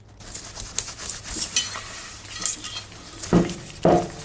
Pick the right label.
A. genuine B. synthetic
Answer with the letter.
A